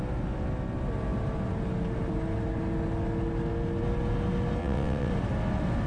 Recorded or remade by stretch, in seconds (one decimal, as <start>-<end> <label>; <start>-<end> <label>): 0.0-4.6 recorded; 4.6-5.1 remade; 5.1-5.9 recorded